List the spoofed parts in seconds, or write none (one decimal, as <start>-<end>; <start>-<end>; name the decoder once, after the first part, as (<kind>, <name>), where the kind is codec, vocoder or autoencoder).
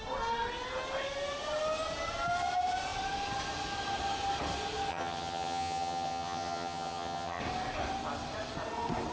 4.9-7.4 (vocoder, HiFi-GAN)